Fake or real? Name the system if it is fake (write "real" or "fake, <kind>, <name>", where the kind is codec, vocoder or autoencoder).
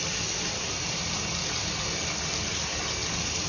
real